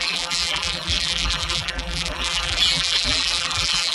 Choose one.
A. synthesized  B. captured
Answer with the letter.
A